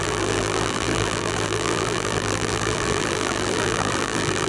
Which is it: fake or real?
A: fake